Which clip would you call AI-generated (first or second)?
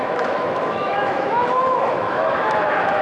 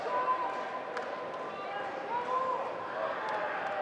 first